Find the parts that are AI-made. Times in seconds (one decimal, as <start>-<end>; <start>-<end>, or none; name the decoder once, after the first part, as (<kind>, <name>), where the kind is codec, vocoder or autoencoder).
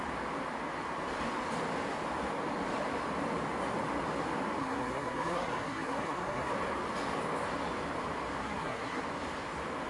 4.6-6.5 (codec, SNAC); 8.4-9.0